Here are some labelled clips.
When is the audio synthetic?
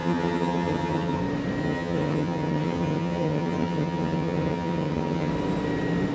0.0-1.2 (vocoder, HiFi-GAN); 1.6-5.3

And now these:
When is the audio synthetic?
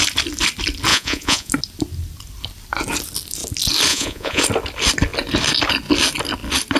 0.9-1.5 (vocoder, Vocos); 3.9-4.4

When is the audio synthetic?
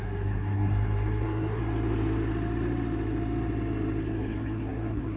0.0-1.6 (codec, SNAC); 4.0-5.2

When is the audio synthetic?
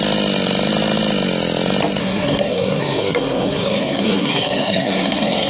2.0-5.5 (codec, SNAC)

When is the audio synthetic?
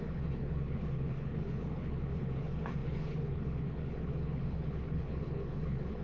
0.0-6.0 (codec, HILCodec)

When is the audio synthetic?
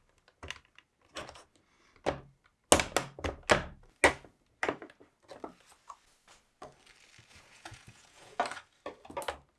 7.3-8.4 (vocoder, Vocos)